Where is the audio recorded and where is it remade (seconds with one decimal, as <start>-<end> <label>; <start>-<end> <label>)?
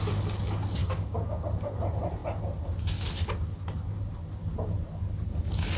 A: 0.0-0.8 recorded; 0.8-1.4 remade; 1.4-5.8 recorded